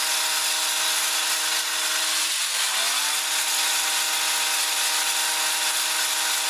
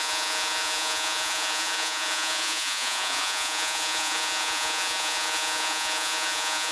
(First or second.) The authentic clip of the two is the first